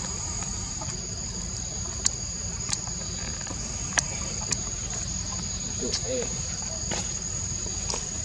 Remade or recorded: remade